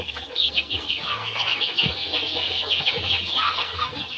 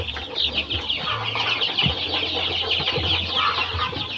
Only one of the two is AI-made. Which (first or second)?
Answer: first